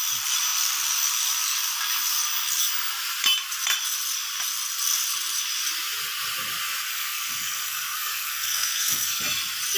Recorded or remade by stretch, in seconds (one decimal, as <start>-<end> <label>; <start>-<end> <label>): 0.0-6.9 recorded; 6.9-9.2 remade; 9.2-9.8 recorded